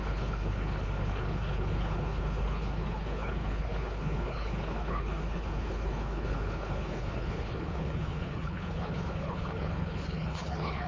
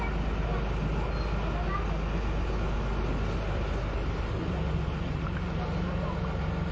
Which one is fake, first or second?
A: first